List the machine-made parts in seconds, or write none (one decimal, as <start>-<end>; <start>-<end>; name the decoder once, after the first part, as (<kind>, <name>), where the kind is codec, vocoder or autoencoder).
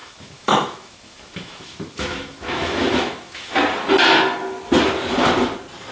0.0-3.5 (autoencoder, DAC-VAE)